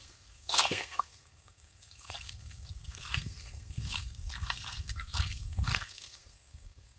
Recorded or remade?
remade